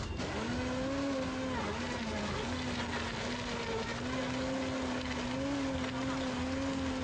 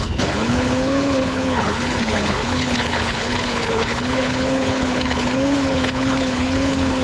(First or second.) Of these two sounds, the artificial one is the second